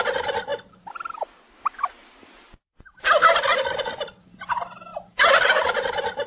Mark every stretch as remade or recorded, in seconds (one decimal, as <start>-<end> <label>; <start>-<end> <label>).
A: 0.0-6.3 recorded